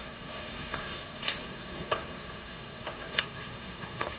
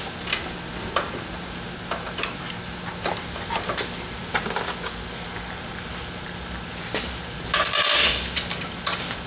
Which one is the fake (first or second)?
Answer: first